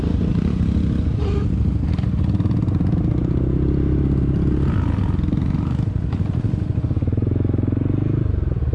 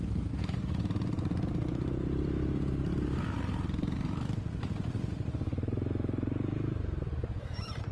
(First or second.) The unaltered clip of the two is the first